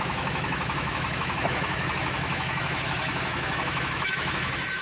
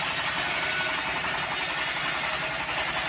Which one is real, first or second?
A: second